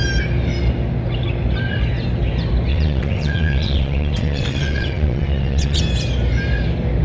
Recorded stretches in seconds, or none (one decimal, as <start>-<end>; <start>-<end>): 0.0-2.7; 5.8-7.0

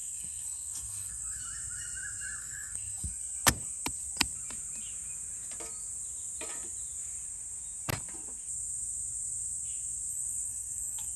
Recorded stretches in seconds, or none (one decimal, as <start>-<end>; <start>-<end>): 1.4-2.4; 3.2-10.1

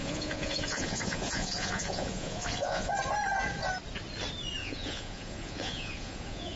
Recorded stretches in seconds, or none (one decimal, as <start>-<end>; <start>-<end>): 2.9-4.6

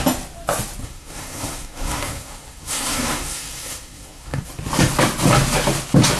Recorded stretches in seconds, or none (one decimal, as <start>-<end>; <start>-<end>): 0.0-0.8; 4.5-6.2

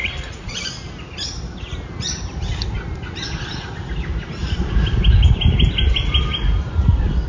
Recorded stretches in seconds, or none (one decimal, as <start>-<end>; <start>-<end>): 0.5-7.3